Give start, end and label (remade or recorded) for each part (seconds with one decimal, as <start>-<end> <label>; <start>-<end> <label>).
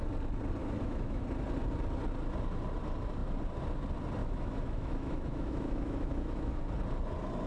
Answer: 0.0-0.6 recorded; 0.6-1.2 remade; 1.2-4.2 recorded; 4.2-6.6 remade; 6.6-7.5 recorded